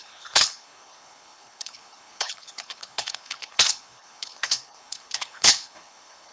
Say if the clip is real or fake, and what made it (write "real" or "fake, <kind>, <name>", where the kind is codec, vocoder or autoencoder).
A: fake, codec, HILCodec